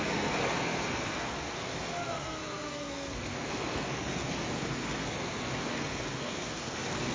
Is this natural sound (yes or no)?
no